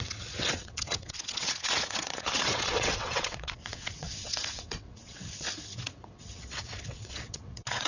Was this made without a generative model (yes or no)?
no